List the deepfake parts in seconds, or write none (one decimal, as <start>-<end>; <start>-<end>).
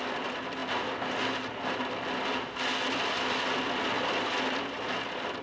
none